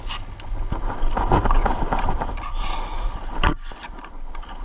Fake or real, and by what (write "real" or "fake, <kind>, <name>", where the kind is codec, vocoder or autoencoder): real